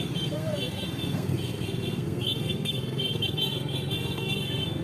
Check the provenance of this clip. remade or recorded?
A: remade